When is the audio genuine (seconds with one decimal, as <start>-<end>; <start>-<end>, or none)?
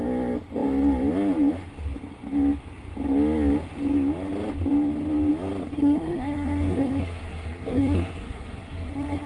0.0-5.7